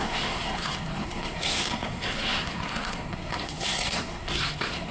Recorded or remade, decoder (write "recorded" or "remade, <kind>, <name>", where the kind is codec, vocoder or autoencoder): remade, codec, SNAC